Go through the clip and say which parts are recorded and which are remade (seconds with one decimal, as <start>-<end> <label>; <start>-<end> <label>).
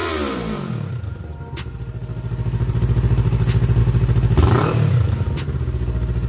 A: 0.0-6.3 recorded